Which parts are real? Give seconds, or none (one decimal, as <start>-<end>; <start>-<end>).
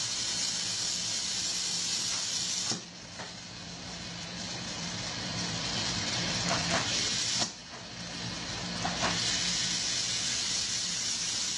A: 7.6-10.2